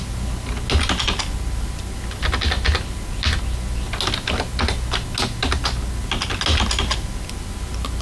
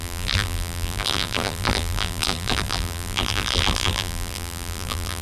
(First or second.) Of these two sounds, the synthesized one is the second